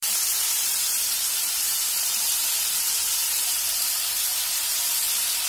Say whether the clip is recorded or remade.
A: remade